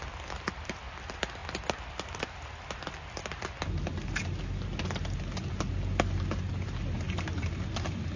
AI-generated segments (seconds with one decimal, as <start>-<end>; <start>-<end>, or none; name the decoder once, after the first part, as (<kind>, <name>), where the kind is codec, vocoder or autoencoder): none